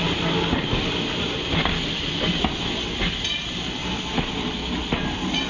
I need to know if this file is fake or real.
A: real